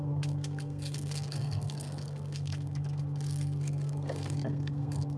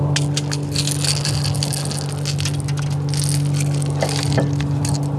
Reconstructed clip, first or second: first